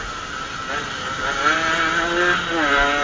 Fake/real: real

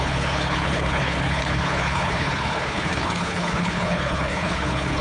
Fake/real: fake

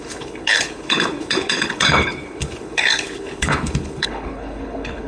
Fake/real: fake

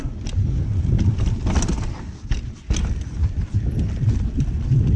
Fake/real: real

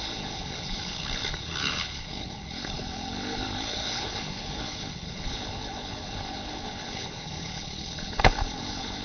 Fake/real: fake